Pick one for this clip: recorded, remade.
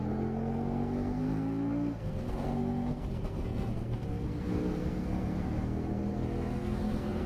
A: remade